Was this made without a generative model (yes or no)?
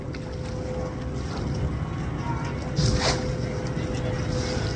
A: yes